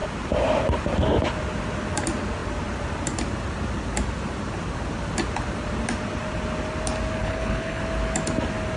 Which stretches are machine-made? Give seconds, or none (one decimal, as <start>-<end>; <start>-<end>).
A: 7.2-7.8